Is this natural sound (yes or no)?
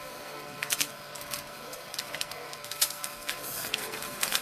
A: no